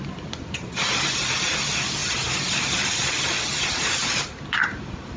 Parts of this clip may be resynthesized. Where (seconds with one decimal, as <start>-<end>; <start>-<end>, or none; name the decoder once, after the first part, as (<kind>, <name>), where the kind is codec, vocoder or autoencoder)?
none